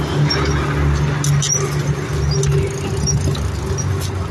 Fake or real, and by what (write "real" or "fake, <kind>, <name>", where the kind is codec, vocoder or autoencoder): real